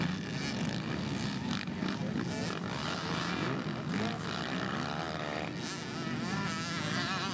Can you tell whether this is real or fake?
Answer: real